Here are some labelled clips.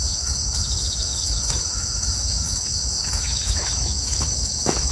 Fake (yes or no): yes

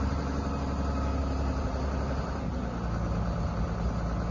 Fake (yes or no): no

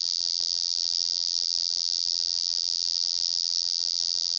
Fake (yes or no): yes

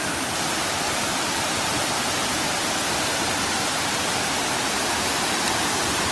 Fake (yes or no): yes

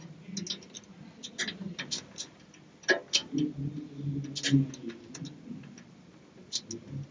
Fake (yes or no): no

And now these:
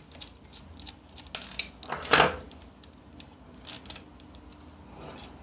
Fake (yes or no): no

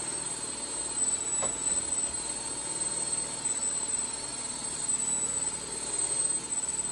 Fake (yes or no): no